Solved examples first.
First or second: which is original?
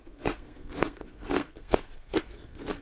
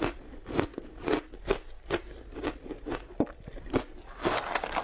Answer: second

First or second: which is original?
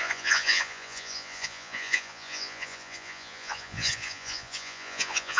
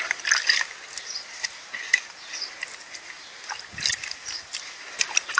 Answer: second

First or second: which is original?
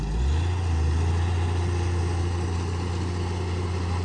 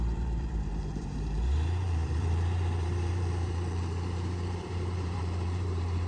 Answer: first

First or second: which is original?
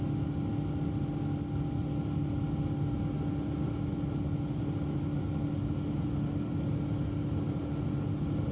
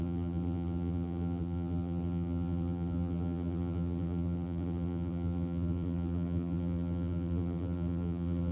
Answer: first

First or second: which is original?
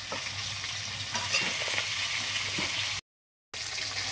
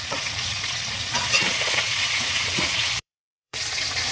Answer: first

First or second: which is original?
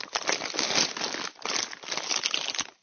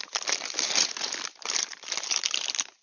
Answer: first